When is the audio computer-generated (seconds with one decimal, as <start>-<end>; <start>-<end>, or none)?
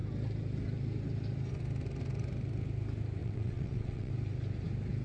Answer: 3.2-4.1